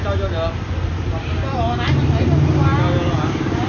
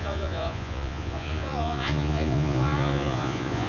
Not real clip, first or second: second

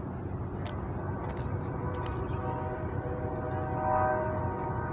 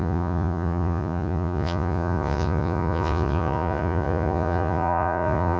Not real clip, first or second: second